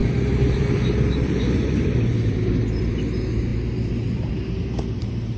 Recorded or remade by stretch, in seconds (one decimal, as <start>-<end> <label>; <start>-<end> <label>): 0.0-2.6 remade; 2.6-5.4 recorded